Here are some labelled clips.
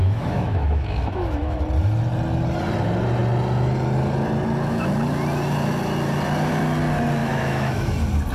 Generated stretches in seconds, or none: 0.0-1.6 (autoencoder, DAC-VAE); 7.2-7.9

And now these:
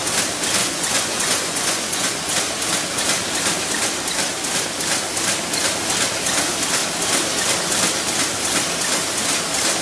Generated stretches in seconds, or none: 0.6-2.3 (vocoder, Vocos)